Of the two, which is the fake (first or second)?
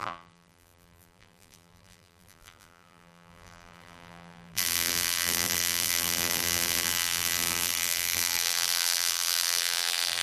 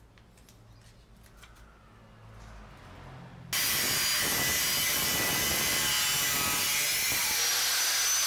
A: first